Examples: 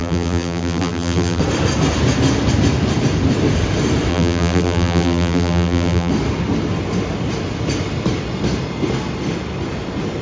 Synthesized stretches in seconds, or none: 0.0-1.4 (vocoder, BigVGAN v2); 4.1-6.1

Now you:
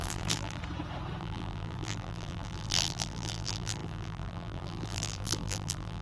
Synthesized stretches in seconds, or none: 0.0-0.6 (vocoder, BigVGAN v2); 1.2-6.0

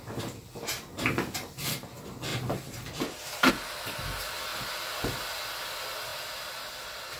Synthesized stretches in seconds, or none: none

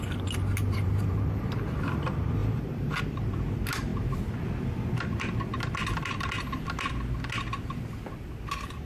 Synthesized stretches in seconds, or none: 0.6-1.4 (vocoder, BigVGAN v2); 2.4-3.0

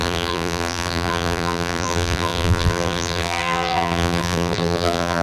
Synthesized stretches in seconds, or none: 0.0-5.2 (vocoder, BigVGAN v2)